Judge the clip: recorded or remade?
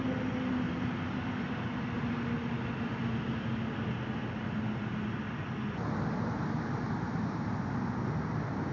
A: recorded